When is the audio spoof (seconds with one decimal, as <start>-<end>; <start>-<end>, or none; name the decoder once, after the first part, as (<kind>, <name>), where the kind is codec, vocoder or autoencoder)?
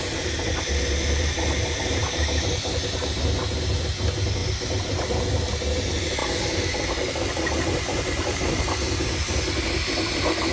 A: none